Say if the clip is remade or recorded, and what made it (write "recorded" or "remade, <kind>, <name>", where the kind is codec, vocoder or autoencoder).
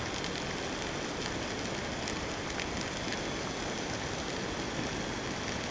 recorded